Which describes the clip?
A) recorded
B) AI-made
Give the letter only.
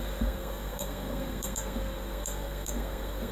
B